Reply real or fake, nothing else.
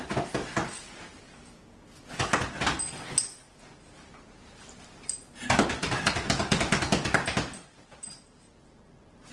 real